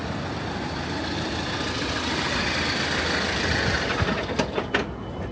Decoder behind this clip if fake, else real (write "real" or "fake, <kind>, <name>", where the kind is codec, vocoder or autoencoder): real